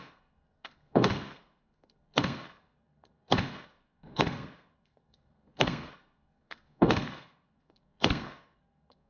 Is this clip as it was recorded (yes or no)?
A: no